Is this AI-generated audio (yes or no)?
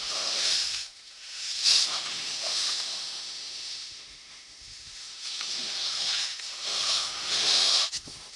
yes